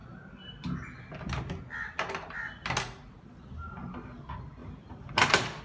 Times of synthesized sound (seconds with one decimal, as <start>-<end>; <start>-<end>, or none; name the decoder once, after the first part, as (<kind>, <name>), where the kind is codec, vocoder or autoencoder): 4.6-5.6 (vocoder, BigVGAN v2)